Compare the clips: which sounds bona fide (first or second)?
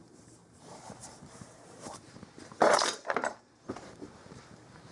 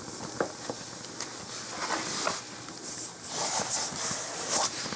second